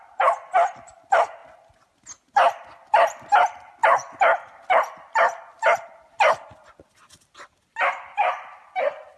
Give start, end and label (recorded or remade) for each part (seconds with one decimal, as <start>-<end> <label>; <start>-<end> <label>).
0.0-9.2 recorded